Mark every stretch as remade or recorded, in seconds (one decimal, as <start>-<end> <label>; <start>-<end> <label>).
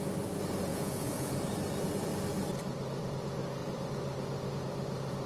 0.0-0.7 recorded; 0.7-1.3 remade; 1.3-5.3 recorded